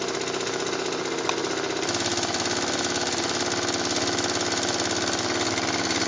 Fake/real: real